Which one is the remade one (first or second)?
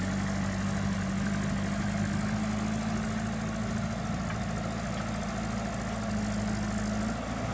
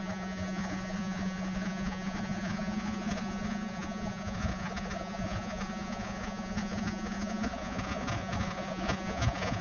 second